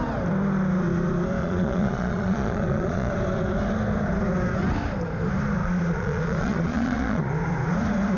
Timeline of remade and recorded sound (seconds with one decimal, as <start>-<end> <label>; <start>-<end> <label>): 0.0-1.4 recorded; 1.4-3.1 remade; 3.1-5.6 recorded; 5.6-7.3 remade; 7.3-8.2 recorded